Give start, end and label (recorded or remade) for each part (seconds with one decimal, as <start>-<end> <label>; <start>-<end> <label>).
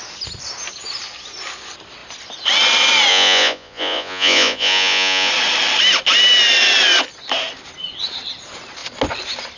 0.0-3.1 recorded; 3.1-5.3 remade; 5.3-9.6 recorded